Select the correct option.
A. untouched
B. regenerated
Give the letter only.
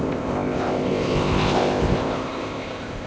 B